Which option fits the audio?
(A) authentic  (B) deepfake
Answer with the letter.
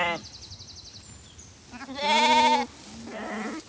A